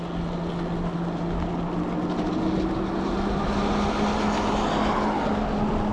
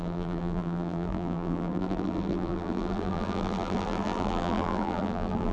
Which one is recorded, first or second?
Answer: first